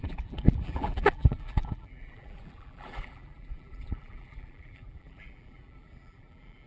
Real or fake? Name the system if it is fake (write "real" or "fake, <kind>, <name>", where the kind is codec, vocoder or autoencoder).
fake, vocoder, BigVGAN v2